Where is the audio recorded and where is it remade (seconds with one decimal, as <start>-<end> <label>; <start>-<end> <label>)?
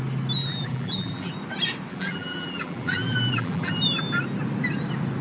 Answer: 0.0-0.4 recorded; 0.4-1.3 remade; 1.3-1.9 recorded; 1.9-3.7 remade; 3.7-5.2 recorded